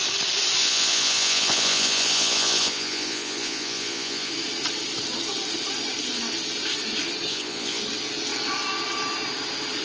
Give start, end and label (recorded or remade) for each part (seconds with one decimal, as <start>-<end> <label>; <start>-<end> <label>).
0.0-0.6 recorded; 0.6-4.3 remade; 4.3-7.3 recorded; 7.3-7.8 remade; 7.8-9.8 recorded